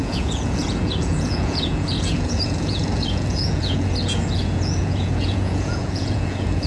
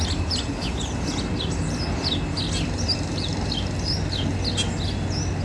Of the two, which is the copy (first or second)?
first